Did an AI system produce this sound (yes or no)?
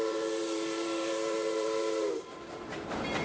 yes